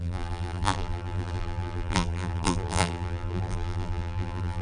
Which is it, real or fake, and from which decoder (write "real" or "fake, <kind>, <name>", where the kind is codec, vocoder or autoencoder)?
fake, vocoder, BigVGAN v2